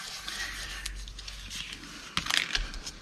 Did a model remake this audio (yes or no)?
no